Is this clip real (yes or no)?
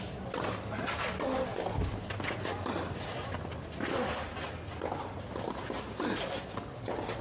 yes